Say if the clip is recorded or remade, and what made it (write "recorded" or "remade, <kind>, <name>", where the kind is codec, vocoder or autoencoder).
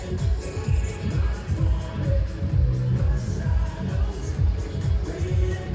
recorded